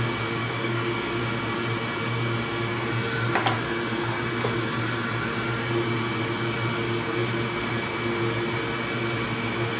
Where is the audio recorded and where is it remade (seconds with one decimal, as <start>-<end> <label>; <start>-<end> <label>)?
0.0-0.4 recorded; 0.4-1.2 remade; 1.2-9.8 recorded